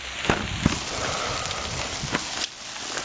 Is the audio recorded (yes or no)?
yes